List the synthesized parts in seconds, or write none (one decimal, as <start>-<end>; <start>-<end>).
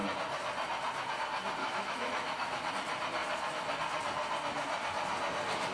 1.6-2.7